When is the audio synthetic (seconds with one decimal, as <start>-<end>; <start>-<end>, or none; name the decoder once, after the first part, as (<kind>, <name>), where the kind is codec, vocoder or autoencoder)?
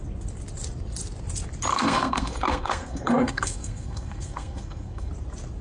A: 1.7-5.1 (codec, SNAC)